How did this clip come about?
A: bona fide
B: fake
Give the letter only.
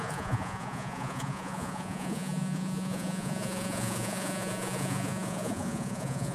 B